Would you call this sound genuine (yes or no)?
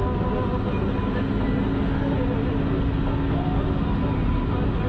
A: yes